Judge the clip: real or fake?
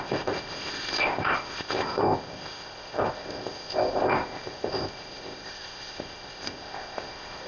fake